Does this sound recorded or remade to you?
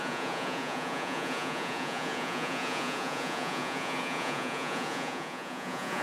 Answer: remade